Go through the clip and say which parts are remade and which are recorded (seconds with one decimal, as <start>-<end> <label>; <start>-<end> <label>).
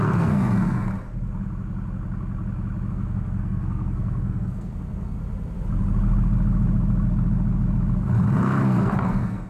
0.0-0.9 remade; 0.9-2.9 recorded; 2.9-5.2 remade; 5.2-8.4 recorded; 8.4-9.5 remade